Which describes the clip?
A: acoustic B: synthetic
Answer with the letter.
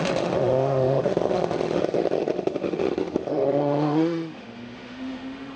B